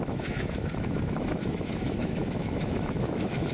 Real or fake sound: fake